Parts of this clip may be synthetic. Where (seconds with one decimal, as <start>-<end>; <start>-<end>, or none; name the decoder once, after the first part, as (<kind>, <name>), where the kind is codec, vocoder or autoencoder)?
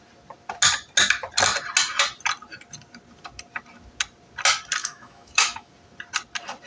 4.8-5.7 (autoencoder, DAC-VAE)